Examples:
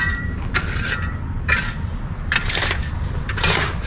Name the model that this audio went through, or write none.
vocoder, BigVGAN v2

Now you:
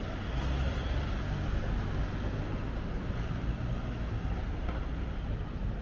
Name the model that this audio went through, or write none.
none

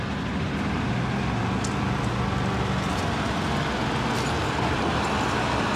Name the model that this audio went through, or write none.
none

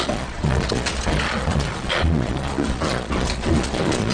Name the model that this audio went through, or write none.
vocoder, Vocos